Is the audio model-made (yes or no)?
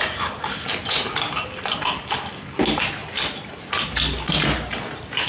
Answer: no